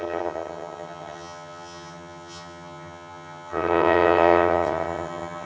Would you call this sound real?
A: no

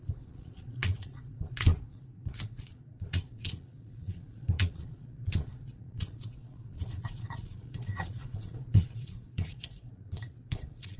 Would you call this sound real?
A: no